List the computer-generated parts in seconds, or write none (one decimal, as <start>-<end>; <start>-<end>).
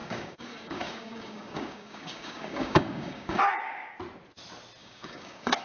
0.0-3.4; 4.8-5.6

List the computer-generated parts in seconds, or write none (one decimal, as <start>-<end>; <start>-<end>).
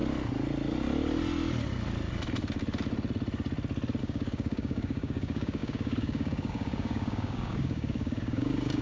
4.0-8.8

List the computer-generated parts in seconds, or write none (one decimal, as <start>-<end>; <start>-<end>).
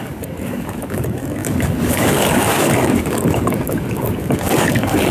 0.0-5.1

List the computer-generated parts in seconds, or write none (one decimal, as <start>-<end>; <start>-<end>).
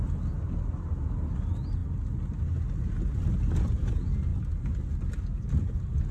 none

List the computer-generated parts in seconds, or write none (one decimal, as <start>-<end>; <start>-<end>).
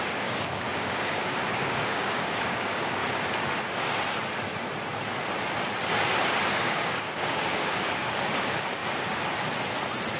0.0-3.0; 6.5-8.8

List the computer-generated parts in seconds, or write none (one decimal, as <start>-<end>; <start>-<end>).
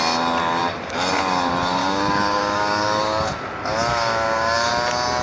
1.8-3.3; 3.9-4.7